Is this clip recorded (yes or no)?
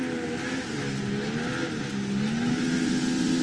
yes